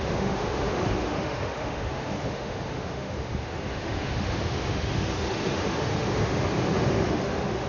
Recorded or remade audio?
remade